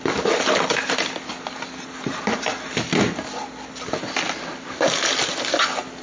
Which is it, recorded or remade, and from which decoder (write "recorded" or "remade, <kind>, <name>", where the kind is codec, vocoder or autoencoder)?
recorded